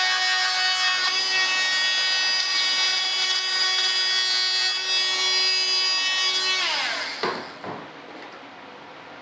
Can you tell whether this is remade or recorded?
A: recorded